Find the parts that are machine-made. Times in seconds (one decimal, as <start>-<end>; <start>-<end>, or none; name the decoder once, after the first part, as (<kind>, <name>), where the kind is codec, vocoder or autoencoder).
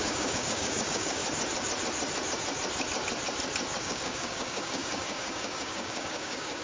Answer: 0.0-1.2 (codec, DAC); 3.8-6.6